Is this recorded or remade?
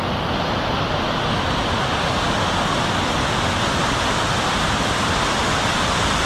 recorded